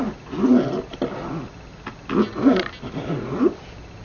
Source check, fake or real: real